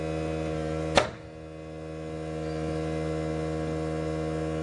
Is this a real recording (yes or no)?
yes